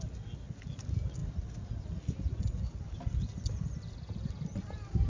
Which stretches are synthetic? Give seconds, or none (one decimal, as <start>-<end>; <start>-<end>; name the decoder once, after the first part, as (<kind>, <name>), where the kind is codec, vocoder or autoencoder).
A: none